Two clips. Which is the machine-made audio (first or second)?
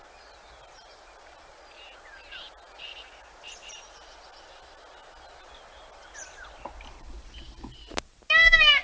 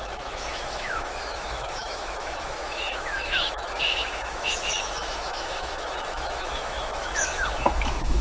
second